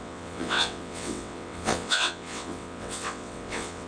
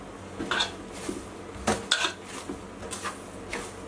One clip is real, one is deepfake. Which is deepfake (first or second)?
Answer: first